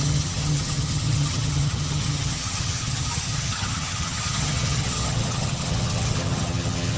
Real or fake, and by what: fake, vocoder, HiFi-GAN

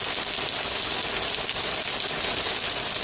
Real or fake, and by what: real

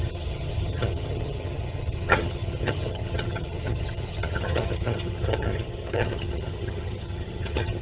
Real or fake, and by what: fake, vocoder, HiFi-GAN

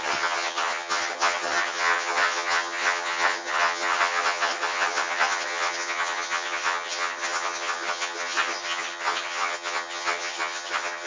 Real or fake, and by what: fake, vocoder, HiFi-GAN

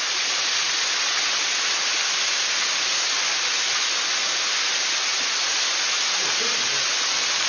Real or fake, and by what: real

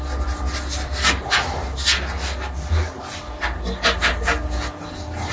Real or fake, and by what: real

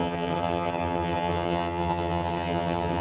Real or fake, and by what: fake, vocoder, HiFi-GAN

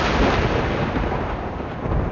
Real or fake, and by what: real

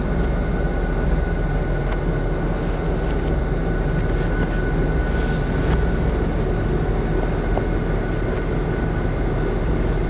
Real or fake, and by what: real